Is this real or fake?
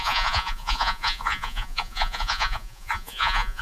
fake